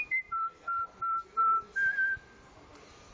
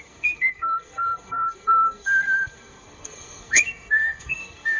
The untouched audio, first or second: first